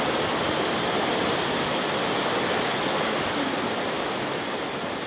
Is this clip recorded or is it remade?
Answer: recorded